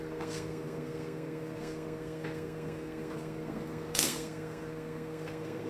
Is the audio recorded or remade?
remade